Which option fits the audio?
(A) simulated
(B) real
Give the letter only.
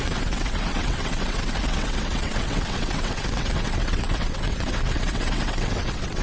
A